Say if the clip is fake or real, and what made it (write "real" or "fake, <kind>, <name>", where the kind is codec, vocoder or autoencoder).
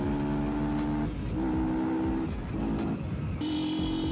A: real